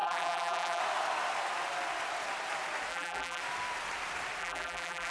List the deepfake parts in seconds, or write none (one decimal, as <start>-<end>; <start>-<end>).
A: 0.0-0.8; 2.9-3.4; 4.4-5.1